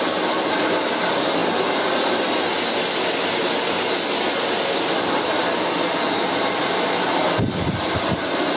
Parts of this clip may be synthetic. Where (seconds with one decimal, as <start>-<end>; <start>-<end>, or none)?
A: 0.0-1.4; 4.3-8.6